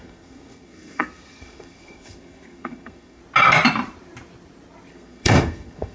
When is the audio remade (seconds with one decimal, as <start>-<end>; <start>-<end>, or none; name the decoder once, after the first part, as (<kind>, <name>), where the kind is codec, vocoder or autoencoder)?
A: 0.0-3.2 (codec, SNAC); 4.9-5.9